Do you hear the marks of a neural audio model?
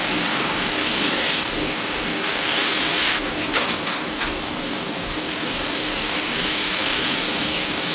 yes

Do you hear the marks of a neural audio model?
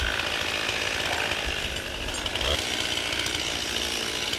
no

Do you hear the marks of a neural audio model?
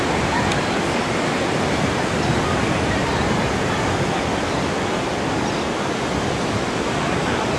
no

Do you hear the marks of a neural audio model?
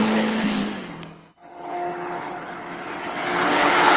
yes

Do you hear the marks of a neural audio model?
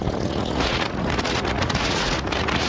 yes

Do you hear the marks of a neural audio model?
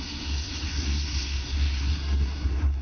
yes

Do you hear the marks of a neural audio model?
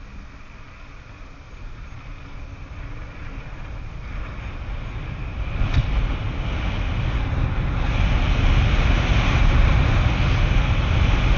no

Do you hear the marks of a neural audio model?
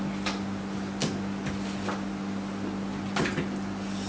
no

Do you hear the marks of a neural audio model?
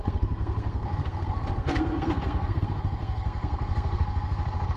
yes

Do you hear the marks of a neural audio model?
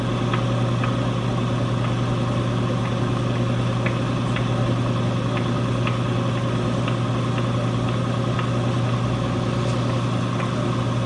no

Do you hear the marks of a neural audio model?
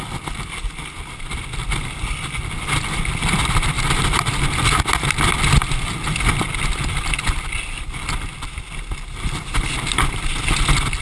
no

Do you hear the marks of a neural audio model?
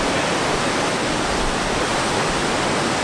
no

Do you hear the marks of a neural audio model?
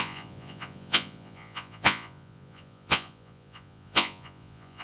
yes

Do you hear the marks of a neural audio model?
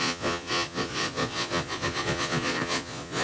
yes